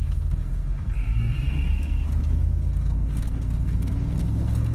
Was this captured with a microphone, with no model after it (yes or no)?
no